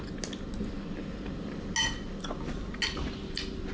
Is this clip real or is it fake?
real